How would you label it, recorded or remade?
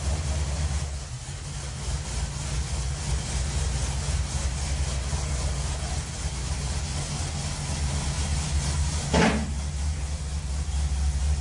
recorded